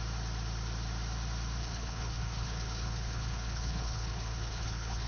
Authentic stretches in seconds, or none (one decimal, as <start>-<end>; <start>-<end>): 0.0-1.6

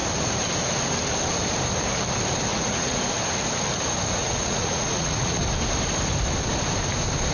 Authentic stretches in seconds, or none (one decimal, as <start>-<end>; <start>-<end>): 0.0-2.5; 3.0-4.2; 5.4-7.3

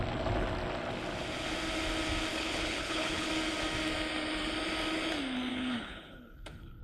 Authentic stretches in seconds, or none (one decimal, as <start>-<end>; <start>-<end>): 0.0-2.3; 3.3-5.5